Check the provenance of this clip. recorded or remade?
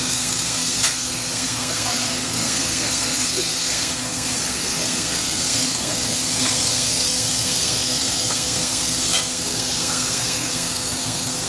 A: remade